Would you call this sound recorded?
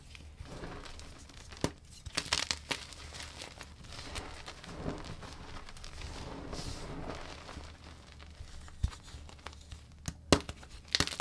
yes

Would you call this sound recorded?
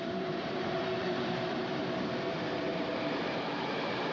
no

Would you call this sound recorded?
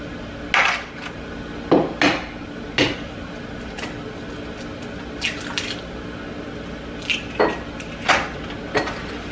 yes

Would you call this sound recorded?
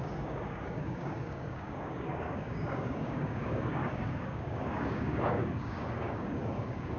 no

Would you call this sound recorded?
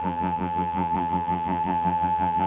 no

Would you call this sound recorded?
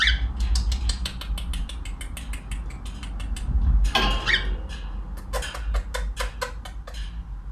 yes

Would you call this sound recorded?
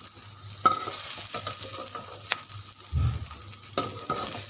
yes